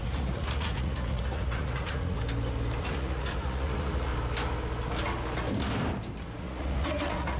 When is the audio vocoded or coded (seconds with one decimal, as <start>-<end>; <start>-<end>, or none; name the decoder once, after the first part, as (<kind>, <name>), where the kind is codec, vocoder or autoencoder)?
0.0-2.2 (vocoder, Vocos); 2.8-4.1; 6.4-7.4